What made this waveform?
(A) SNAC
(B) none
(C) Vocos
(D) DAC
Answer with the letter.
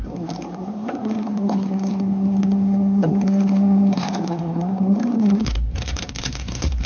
A